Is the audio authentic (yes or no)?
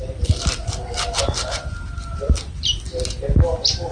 yes